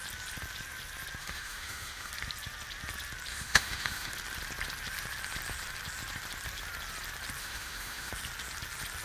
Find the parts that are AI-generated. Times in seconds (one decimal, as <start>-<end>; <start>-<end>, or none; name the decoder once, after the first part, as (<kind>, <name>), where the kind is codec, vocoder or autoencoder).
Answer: 1.2-2.1 (autoencoder, DAC-VAE); 3.3-4.1; 7.4-8.1